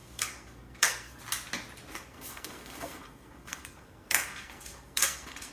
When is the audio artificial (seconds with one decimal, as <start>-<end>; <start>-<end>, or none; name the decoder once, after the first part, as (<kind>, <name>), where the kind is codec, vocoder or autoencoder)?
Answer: 0.0-1.2 (codec, SNAC); 1.9-5.5